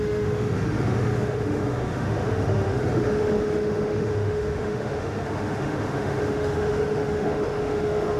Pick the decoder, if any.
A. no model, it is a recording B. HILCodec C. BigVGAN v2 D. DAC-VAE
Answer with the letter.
D